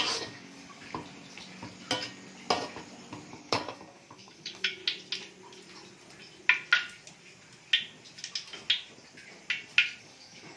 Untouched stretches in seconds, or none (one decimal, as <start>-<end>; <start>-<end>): 0.8-3.3; 4.8-10.0